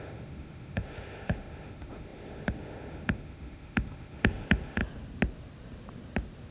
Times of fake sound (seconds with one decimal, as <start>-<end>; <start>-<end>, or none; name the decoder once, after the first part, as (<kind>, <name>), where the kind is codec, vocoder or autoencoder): 0.0-4.8 (autoencoder, DAC-VAE)